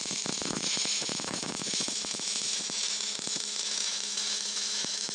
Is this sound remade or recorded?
remade